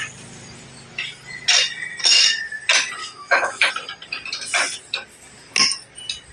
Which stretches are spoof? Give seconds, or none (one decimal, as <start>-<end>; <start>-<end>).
3.0-3.7